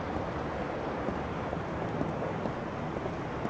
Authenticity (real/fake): real